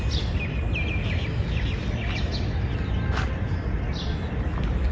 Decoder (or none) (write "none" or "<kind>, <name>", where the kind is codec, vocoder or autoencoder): none